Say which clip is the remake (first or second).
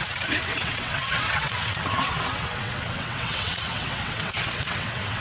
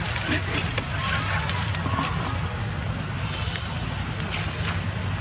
first